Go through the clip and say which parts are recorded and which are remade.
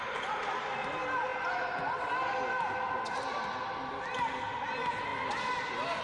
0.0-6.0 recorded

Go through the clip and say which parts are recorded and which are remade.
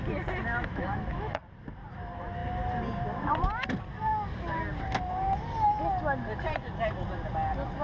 0.0-0.5 recorded; 0.5-1.4 remade; 1.4-7.8 recorded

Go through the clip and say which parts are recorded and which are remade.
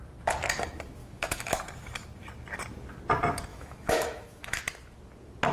0.0-1.0 recorded; 1.0-1.6 remade; 1.6-3.5 recorded; 3.5-4.6 remade; 4.6-5.5 recorded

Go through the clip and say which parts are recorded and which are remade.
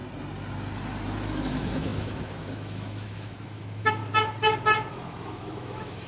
0.0-1.3 recorded; 1.3-4.0 remade; 4.0-4.9 recorded; 4.9-6.1 remade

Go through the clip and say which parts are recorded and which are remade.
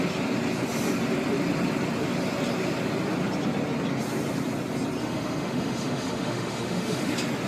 0.0-5.0 recorded; 5.0-7.1 remade; 7.1-7.5 recorded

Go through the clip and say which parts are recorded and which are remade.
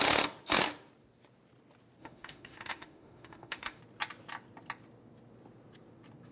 0.0-2.0 recorded; 2.0-3.8 remade; 3.8-6.3 recorded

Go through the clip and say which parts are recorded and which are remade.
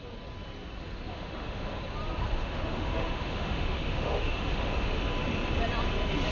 0.0-1.1 recorded; 1.1-1.8 remade; 1.8-2.4 recorded; 2.4-5.0 remade; 5.0-6.3 recorded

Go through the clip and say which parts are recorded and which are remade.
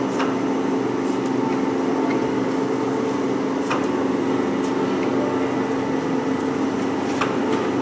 0.0-7.8 recorded